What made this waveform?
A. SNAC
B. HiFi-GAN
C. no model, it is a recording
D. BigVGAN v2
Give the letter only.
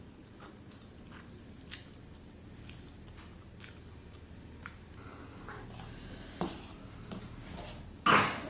C